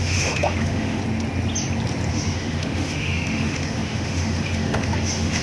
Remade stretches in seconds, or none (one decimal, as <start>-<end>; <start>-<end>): 0.0-1.0; 2.1-5.4